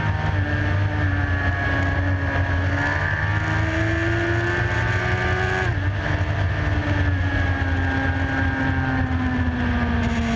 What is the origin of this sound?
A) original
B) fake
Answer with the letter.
A